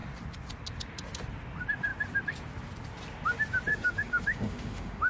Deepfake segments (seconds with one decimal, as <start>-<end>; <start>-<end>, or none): 3.7-5.1